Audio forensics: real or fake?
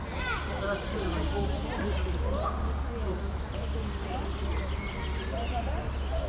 real